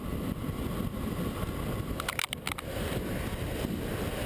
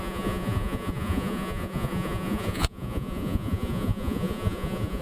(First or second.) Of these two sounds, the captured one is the first